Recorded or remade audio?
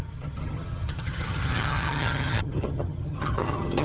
remade